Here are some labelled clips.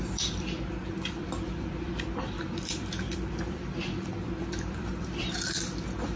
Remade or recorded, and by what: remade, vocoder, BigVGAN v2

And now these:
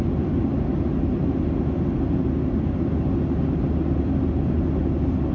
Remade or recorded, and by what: recorded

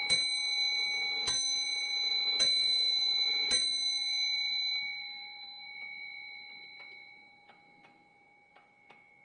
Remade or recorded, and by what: remade, vocoder, Vocos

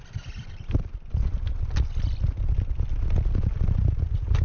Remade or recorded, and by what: recorded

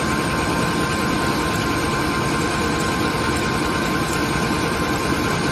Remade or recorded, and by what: remade, vocoder, BigVGAN v2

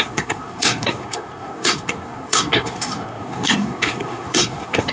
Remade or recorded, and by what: remade, codec, SNAC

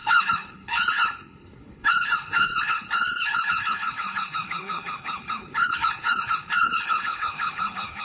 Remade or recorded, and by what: remade, codec, HILCodec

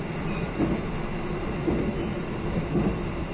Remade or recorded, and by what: recorded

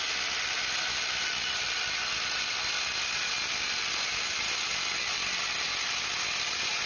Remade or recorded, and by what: recorded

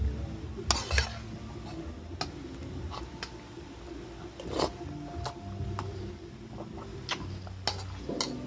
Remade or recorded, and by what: recorded